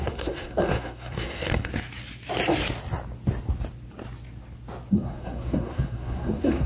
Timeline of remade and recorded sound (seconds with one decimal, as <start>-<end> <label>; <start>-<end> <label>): 0.0-1.7 remade; 1.7-4.9 recorded; 4.9-6.7 remade